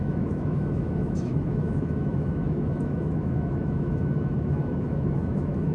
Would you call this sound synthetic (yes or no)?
yes